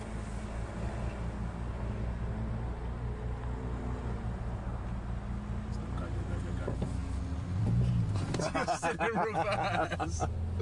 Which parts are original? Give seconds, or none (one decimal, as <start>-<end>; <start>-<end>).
0.0-10.6